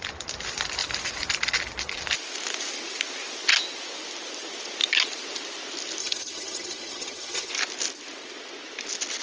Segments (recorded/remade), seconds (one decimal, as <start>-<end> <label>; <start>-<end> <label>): 0.0-6.0 recorded; 6.0-7.5 remade; 7.5-9.2 recorded